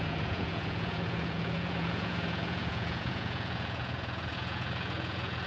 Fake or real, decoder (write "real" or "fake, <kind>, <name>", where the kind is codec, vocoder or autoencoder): fake, vocoder, Vocos